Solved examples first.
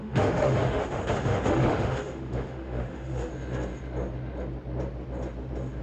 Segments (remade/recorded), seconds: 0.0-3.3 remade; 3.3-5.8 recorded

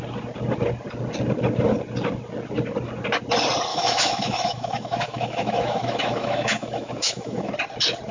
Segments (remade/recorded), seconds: 0.0-3.7 recorded; 3.7-7.5 remade; 7.5-8.1 recorded

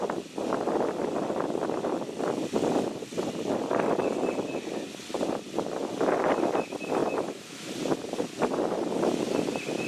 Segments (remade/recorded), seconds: 0.0-7.0 recorded; 7.0-7.7 remade; 7.7-9.9 recorded